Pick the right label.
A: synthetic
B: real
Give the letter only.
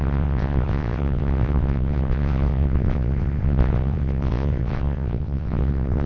A